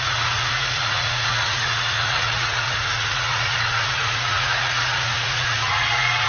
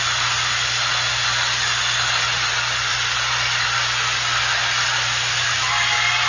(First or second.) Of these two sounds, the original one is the second